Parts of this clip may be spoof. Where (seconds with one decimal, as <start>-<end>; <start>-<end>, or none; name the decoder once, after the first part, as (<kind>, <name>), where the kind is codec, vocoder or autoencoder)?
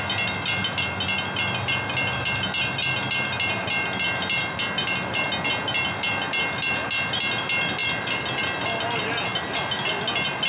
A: none